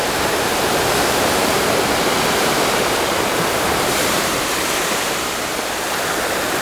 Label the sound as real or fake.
fake